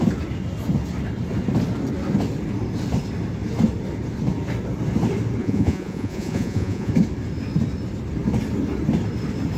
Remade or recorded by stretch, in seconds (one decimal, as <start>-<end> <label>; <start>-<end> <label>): 0.0-5.4 recorded; 5.4-6.9 remade; 6.9-9.6 recorded